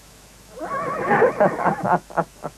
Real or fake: fake